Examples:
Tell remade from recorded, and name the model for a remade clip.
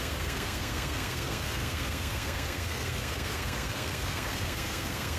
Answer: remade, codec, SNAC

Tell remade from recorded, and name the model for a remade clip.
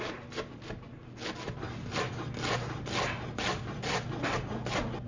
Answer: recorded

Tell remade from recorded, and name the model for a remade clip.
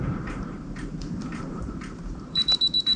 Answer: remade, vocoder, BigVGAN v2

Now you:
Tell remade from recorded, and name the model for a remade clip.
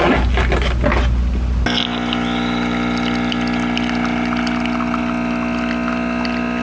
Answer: recorded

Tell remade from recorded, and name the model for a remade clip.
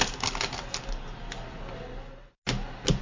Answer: recorded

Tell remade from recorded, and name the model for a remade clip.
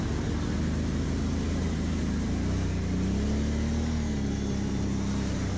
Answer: recorded